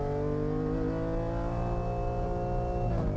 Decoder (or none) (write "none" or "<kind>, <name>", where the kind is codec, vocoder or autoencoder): none